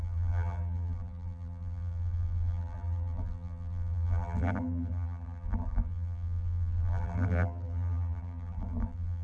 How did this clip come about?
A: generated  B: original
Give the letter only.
A